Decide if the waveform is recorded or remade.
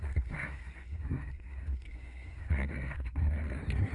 remade